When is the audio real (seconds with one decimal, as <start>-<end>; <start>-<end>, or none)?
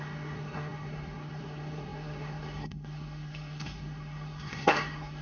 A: none